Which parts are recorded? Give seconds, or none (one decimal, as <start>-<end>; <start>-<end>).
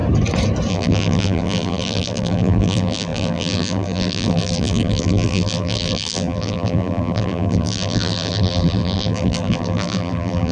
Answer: 0.0-0.7